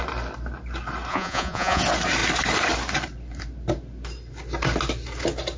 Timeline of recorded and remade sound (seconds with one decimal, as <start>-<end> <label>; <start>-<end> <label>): 0.0-1.1 recorded; 1.1-1.8 remade; 1.8-5.6 recorded